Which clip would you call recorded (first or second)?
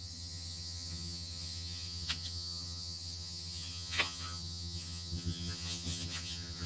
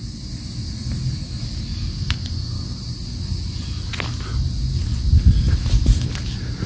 second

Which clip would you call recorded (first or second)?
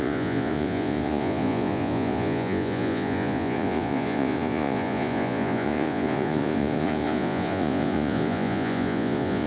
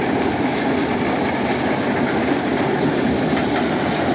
second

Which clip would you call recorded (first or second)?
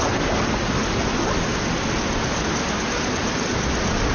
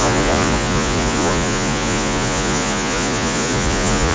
first